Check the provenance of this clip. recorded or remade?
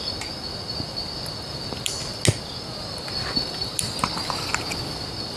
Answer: recorded